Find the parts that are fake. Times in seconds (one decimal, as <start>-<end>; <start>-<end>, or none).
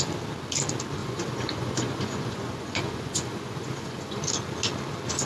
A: 1.0-4.2